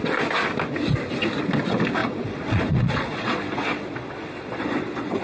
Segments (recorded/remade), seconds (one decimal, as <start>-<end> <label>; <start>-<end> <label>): 0.0-2.0 recorded; 2.0-5.2 remade